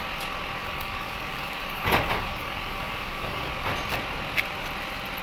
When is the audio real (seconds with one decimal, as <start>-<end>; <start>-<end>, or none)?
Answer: 0.0-0.6; 3.7-5.2